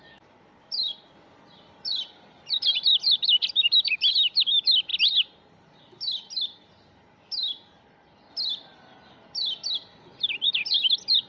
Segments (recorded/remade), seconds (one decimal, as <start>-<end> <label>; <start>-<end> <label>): 0.0-4.9 remade; 4.9-8.3 recorded; 8.3-11.3 remade

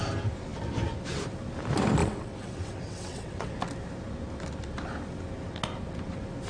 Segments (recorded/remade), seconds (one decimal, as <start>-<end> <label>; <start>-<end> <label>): 0.0-2.0 recorded; 2.0-3.5 remade; 3.5-6.5 recorded